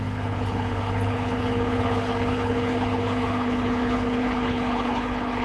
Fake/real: fake